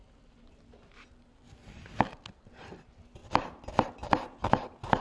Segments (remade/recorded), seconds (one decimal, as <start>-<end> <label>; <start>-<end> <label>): 0.0-5.0 recorded